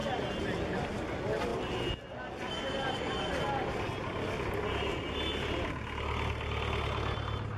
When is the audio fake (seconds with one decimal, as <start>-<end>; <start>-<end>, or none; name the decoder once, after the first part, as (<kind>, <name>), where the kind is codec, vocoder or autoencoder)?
none

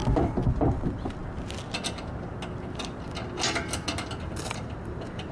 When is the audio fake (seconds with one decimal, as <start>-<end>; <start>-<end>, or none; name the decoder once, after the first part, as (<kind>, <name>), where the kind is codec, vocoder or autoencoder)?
0.5-1.2 (vocoder, BigVGAN v2); 4.4-5.3

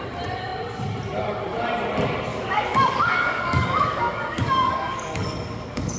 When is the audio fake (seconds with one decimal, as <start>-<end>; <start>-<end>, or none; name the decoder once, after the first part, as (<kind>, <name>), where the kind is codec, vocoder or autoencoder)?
2.3-6.0 (codec, DAC)